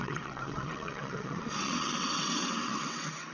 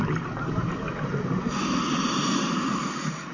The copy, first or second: first